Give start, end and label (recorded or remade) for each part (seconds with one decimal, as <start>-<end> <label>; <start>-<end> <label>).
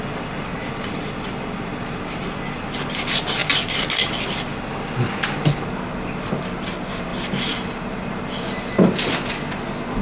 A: 0.0-7.1 recorded; 7.1-8.1 remade; 8.1-10.0 recorded